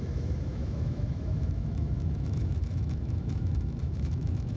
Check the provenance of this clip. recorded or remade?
remade